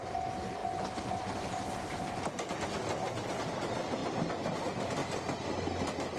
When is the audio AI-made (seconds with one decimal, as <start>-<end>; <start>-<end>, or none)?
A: none